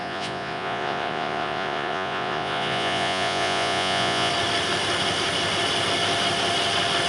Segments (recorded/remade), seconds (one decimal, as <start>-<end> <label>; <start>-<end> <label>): 0.0-4.3 remade; 4.3-7.1 recorded